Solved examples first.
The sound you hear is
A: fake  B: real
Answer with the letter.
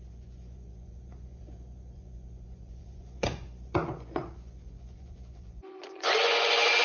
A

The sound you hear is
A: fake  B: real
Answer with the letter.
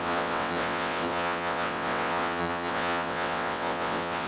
A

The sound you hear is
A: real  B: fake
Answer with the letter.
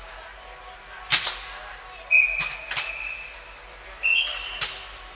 A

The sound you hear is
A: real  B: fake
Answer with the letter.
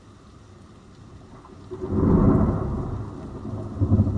A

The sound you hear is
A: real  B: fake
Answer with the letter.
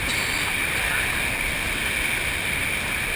A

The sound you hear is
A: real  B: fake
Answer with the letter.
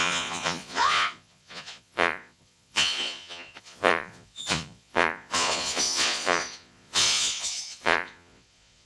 B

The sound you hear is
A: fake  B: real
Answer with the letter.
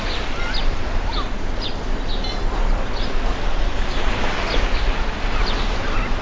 B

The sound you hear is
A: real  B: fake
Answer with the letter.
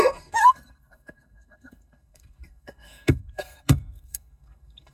B